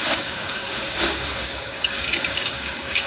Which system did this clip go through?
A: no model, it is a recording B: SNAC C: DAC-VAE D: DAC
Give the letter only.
D